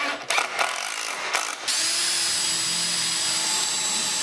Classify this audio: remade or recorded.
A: recorded